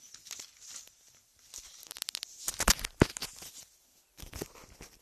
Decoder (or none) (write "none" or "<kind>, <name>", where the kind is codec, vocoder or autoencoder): none